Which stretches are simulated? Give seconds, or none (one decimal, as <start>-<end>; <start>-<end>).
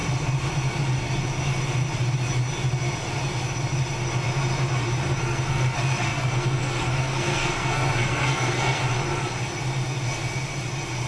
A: 5.2-8.8